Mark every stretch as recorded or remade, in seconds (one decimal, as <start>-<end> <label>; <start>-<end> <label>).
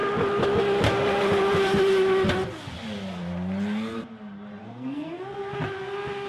0.0-4.6 recorded; 4.6-5.5 remade; 5.5-6.3 recorded